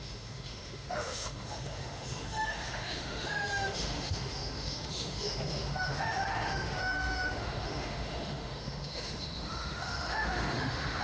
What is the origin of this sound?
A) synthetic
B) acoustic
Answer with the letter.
A